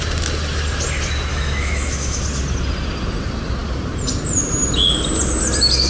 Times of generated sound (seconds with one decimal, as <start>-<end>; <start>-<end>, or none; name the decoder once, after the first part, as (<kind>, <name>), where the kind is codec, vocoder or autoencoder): 1.3-2.2 (autoencoder, DAC-VAE)

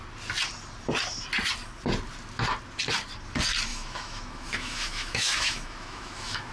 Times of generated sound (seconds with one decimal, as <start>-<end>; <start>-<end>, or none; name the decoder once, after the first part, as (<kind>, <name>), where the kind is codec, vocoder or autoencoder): 3.7-6.5 (autoencoder, DAC-VAE)

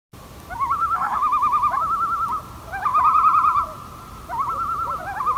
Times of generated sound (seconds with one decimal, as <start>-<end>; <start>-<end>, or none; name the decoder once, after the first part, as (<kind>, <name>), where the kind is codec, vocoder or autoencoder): 0.8-1.6 (autoencoder, DAC-VAE)

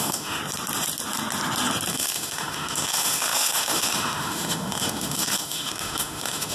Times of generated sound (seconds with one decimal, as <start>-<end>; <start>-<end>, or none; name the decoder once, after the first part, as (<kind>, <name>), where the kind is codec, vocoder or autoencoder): 0.0-0.4 (autoencoder, DAC-VAE); 1.9-6.5

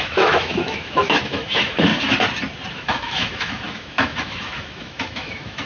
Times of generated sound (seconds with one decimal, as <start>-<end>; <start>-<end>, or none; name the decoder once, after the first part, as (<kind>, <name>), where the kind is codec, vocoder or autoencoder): 0.0-1.9 (autoencoder, DAC-VAE); 2.7-5.7

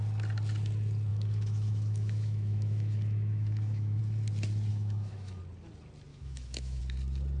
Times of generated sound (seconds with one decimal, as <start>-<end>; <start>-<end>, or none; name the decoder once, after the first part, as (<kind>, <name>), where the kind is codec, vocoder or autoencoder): 1.1-4.0 (autoencoder, DAC-VAE); 4.7-5.4; 6.1-6.8